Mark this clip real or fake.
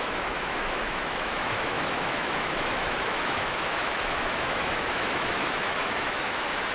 fake